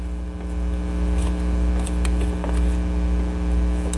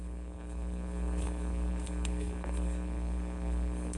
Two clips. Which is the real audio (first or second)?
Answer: first